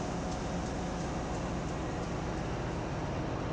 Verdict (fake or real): real